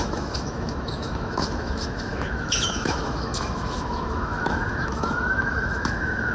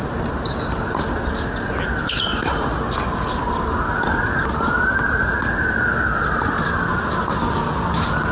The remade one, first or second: first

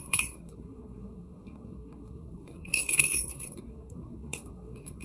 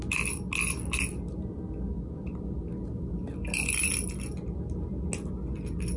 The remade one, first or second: first